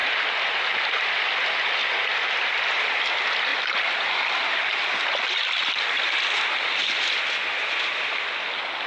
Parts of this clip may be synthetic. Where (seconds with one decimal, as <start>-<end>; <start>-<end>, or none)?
none